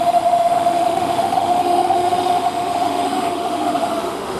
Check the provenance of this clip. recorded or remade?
remade